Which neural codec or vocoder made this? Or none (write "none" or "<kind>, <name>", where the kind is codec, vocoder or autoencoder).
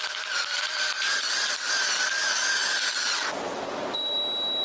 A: none